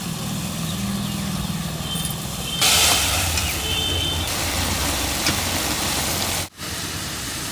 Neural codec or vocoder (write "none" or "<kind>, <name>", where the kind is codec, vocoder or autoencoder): none